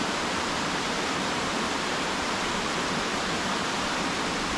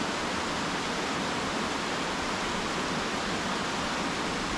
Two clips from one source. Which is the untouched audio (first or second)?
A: second